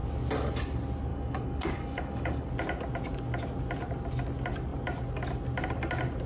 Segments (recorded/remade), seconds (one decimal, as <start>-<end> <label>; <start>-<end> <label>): 0.0-1.1 recorded; 1.1-2.5 remade; 2.5-6.3 recorded